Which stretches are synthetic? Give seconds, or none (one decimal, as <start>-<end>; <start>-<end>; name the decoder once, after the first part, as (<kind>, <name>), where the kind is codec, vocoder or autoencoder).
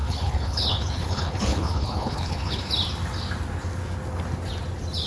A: 0.0-2.7 (codec, HILCodec)